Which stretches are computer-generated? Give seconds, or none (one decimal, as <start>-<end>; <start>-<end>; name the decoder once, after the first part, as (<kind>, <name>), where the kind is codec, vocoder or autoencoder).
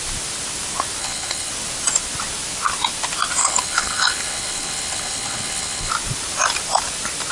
1.0-1.5 (codec, HILCodec); 3.4-5.9